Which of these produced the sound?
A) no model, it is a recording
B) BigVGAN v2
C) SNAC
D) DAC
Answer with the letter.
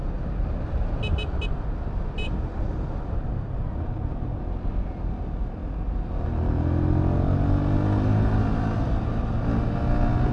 A